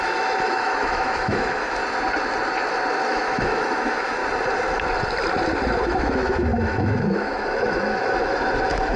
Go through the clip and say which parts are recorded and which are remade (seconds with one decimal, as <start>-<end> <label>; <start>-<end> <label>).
0.0-1.8 remade; 1.8-3.1 recorded; 3.1-4.2 remade; 4.2-5.8 recorded; 5.8-9.0 remade